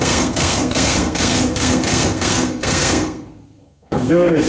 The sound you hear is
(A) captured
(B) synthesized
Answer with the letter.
B